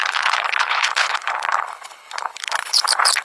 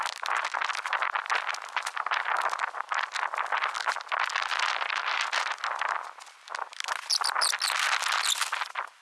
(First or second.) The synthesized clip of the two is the first